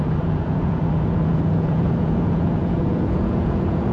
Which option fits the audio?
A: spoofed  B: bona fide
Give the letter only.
A